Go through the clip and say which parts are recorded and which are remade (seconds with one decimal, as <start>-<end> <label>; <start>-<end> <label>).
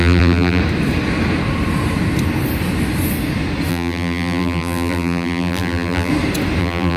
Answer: 0.0-0.6 remade; 0.6-3.7 recorded; 3.7-6.1 remade; 6.1-6.6 recorded; 6.6-7.0 remade